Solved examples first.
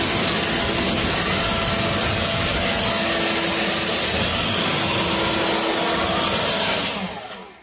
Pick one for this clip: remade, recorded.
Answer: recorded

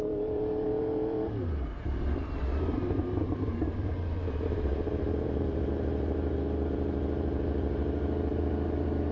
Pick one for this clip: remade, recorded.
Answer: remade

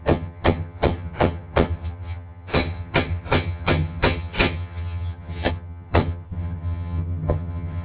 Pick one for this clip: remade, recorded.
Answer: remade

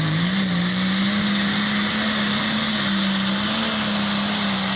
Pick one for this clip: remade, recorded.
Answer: recorded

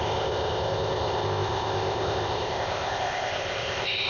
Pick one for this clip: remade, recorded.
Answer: remade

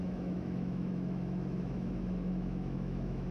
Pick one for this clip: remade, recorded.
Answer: remade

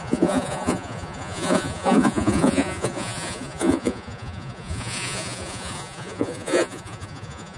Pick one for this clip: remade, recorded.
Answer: remade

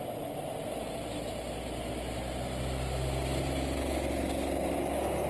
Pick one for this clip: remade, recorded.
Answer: recorded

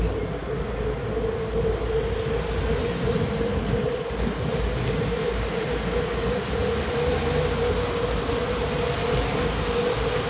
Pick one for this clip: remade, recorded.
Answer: recorded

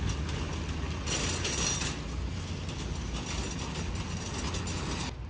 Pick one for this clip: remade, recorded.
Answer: recorded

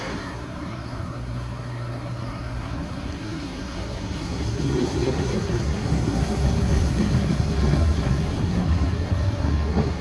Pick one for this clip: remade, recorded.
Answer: remade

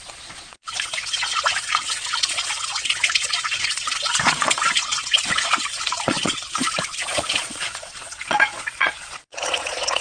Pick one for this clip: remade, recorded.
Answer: remade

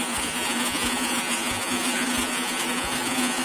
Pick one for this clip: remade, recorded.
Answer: remade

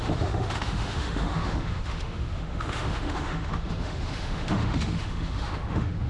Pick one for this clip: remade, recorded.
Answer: remade